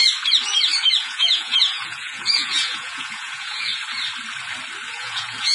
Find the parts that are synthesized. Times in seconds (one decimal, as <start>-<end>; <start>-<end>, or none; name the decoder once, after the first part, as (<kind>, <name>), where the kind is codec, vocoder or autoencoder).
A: 1.0-3.7 (vocoder, Vocos); 4.9-5.5